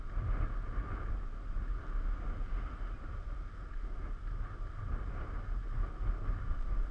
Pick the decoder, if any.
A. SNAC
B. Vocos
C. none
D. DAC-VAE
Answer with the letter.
C